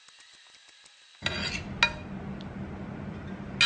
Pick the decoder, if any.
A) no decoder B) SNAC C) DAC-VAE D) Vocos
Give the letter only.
A